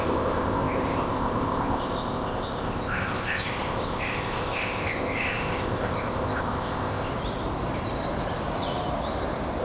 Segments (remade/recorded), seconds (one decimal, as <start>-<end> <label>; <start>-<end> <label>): 0.0-7.1 remade; 7.1-9.6 recorded